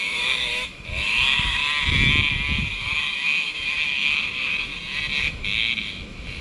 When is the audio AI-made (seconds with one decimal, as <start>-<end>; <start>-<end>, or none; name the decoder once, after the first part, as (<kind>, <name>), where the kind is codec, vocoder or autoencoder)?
0.0-1.6 (autoencoder, DAC-VAE); 2.8-4.7; 5.2-6.4